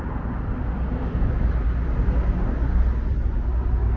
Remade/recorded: recorded